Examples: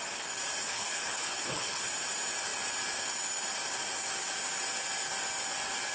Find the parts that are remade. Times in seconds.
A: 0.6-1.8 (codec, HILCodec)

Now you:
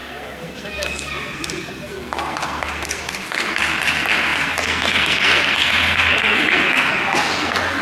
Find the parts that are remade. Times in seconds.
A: 0.0-7.8 (codec, SNAC)